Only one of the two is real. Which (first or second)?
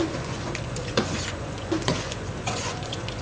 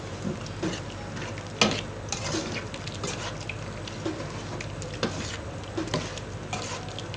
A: second